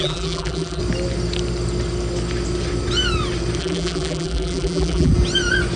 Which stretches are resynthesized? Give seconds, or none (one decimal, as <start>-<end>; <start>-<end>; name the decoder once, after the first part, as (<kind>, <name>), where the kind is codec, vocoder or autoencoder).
0.0-0.8 (vocoder, BigVGAN v2); 3.6-5.1